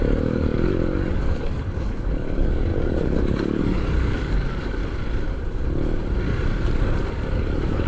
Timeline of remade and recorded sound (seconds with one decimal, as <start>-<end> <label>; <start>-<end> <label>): 0.0-4.8 remade; 4.8-7.3 recorded; 7.3-7.9 remade